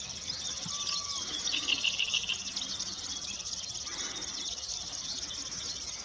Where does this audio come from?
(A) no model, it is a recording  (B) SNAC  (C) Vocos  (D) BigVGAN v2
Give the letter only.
A